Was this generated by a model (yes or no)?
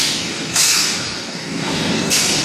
yes